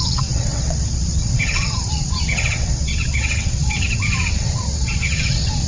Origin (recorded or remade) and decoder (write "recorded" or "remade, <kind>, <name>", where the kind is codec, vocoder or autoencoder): remade, vocoder, WaveNeXt